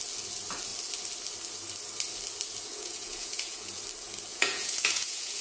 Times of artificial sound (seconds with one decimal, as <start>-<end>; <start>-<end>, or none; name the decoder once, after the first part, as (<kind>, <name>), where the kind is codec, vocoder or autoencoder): 2.7-3.8 (vocoder, Vocos); 4.3-5.4